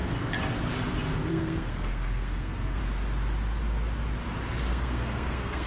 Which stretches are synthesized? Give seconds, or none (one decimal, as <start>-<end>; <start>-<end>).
1.3-2.8; 4.7-5.7

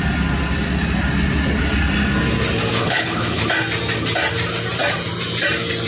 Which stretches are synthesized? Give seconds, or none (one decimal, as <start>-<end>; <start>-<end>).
2.8-3.4

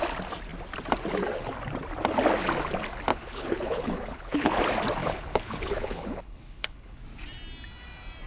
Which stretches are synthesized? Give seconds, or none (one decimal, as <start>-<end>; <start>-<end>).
3.1-4.6; 5.0-7.0

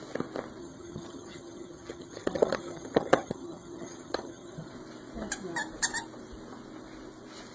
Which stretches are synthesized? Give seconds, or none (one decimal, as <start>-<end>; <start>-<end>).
0.6-4.7

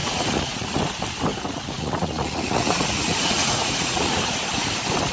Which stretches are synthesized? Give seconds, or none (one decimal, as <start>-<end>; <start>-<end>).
0.0-0.8; 1.3-4.4